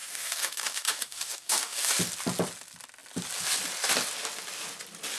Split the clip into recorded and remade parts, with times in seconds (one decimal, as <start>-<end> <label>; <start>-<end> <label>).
0.0-1.9 remade; 1.9-5.2 recorded